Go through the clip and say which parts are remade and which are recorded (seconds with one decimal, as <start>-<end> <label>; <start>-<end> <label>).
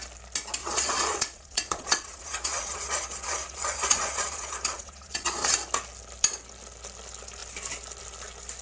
0.0-0.6 recorded; 0.6-5.5 remade; 5.5-8.6 recorded